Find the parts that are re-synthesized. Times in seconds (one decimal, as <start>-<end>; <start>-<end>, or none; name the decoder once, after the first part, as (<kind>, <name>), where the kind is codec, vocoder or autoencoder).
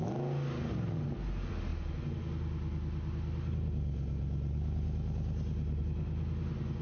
none